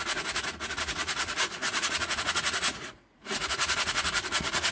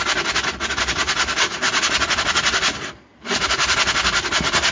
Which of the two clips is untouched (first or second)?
second